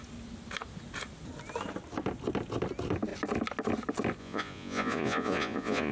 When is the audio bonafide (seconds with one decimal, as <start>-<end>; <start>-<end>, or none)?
0.0-4.2